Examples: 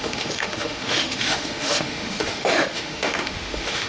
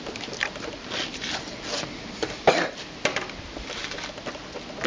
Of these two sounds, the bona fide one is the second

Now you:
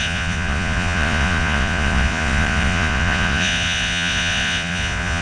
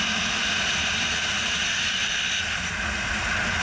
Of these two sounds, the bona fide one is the second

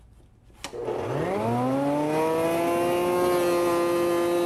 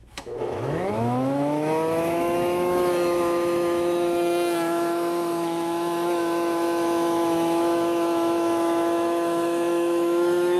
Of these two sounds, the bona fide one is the first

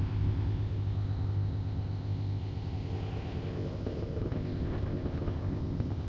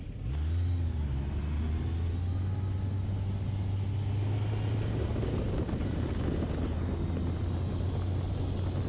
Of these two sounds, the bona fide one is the second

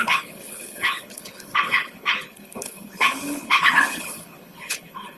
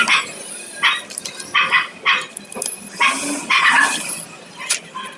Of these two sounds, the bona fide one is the second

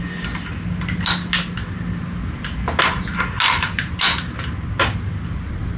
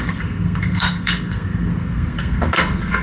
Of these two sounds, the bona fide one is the first